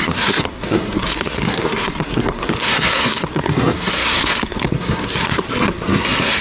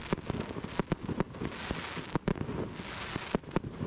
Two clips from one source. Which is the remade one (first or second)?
first